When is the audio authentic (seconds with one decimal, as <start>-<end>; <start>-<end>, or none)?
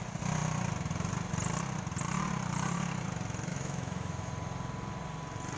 0.0-3.5; 4.3-5.6